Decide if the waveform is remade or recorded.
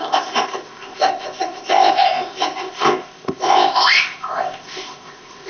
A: remade